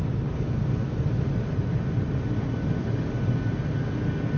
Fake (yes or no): no